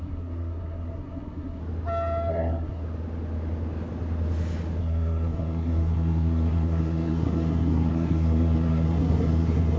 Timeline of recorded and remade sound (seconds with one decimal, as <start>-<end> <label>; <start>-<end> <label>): 0.0-1.6 remade; 1.6-2.3 recorded; 2.3-2.8 remade; 2.8-4.8 recorded; 4.8-9.8 remade